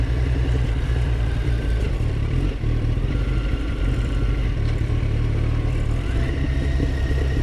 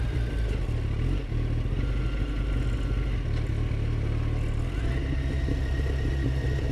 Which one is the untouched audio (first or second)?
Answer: second